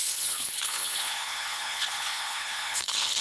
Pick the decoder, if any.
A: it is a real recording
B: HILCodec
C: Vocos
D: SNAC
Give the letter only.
B